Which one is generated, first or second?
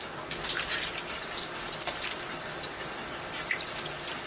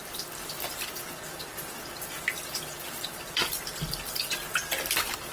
second